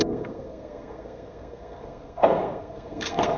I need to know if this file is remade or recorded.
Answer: remade